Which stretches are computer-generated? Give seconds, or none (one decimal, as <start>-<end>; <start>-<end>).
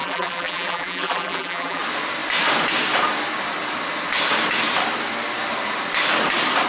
0.0-1.8